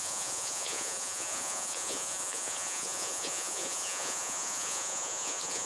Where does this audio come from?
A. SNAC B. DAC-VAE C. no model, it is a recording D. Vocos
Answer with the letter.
D